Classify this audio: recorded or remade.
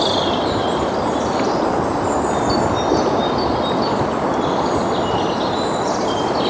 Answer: recorded